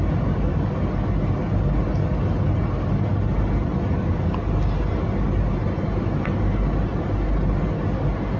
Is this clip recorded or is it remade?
recorded